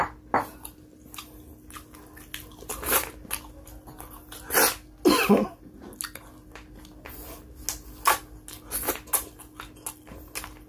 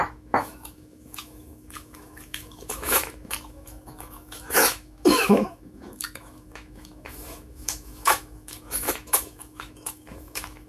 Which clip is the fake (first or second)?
second